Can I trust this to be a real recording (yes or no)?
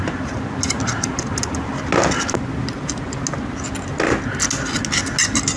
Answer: yes